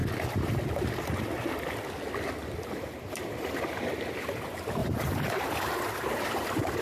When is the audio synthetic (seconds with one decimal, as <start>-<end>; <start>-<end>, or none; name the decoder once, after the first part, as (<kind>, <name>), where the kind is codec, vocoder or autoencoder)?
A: 3.0-6.8 (vocoder, BigVGAN v2)